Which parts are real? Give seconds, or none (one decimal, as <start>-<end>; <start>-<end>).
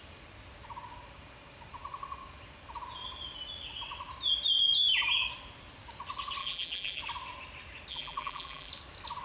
0.0-6.4; 7.0-7.9; 8.7-9.2